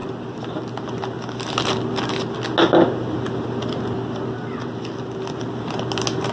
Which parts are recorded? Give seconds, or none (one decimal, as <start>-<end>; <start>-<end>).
0.0-6.3